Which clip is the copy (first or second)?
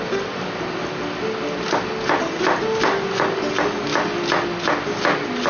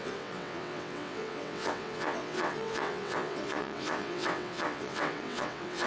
second